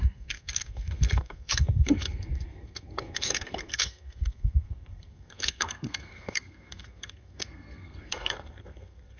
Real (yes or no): no